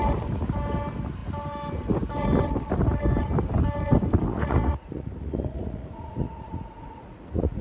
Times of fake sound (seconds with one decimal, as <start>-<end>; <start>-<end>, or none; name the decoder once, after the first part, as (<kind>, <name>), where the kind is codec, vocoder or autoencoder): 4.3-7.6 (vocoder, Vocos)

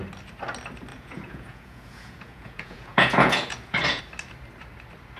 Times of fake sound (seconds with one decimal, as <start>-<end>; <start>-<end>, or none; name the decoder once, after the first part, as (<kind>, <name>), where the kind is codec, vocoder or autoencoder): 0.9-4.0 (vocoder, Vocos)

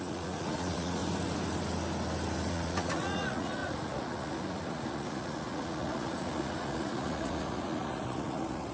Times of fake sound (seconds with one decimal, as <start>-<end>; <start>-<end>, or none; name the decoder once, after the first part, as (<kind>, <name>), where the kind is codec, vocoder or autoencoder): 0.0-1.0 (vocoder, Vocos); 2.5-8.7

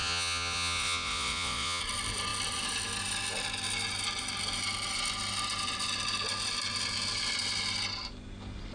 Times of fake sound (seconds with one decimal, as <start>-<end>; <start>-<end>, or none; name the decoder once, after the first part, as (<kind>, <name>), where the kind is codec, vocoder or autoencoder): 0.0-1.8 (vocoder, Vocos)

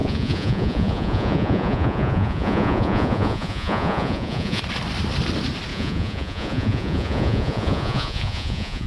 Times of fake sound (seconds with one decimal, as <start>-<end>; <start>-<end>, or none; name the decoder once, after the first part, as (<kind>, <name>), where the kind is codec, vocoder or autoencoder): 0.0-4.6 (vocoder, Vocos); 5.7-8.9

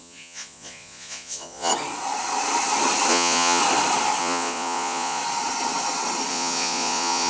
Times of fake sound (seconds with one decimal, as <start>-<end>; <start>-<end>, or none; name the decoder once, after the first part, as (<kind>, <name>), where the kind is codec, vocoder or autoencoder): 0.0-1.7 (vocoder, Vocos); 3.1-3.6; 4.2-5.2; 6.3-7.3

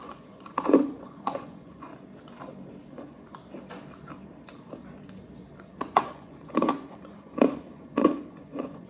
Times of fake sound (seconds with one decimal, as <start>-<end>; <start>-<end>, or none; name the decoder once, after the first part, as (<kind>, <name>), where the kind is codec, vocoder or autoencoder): 0.0-1.9 (vocoder, Vocos); 2.9-3.4; 5.7-8.9

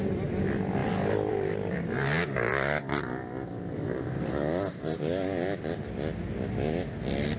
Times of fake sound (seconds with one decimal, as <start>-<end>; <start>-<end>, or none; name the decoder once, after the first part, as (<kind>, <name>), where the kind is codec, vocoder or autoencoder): none